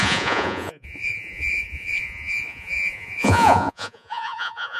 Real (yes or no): no